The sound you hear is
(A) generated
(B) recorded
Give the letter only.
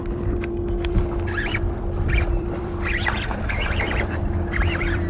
A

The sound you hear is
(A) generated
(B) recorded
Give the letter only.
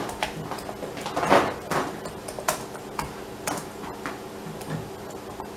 B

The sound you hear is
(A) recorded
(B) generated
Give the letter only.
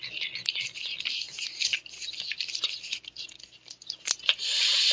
B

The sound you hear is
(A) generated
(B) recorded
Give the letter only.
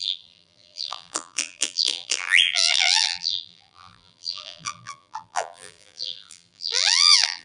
A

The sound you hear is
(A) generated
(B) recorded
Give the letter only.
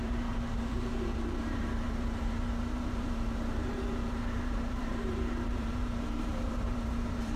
A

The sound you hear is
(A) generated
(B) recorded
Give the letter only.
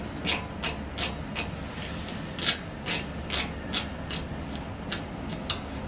B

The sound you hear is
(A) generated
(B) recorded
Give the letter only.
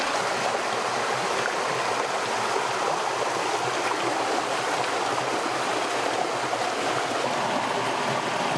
B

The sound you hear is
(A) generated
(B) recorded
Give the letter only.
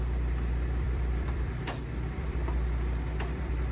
A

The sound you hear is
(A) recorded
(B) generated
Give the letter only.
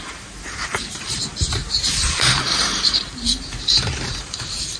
B